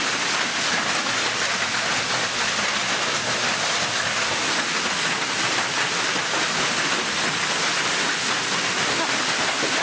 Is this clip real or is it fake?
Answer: real